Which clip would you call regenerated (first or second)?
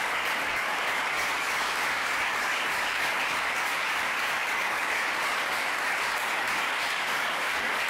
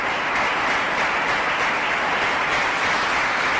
first